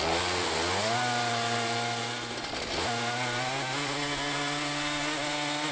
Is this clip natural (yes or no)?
yes